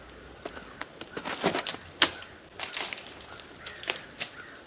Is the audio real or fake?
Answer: real